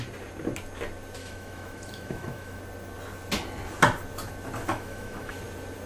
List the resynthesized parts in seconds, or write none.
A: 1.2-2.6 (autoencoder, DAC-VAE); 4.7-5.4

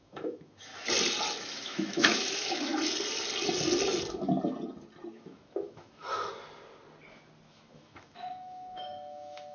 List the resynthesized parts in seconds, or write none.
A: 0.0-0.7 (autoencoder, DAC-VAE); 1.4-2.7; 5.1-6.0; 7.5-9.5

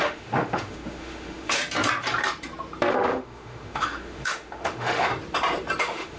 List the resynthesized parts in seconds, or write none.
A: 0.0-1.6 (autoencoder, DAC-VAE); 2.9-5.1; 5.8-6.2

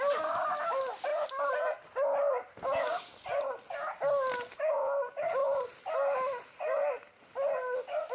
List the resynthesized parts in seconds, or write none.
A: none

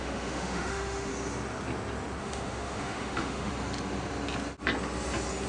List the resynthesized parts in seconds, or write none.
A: 0.0-1.1 (autoencoder, DAC-VAE); 2.2-3.5